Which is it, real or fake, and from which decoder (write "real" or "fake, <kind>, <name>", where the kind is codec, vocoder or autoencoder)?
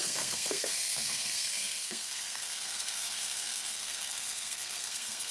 fake, codec, SNAC